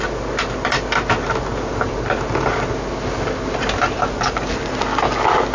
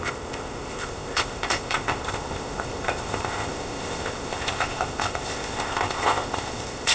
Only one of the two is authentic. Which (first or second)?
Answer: first